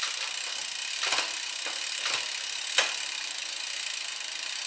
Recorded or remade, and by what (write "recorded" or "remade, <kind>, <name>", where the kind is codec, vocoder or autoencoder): recorded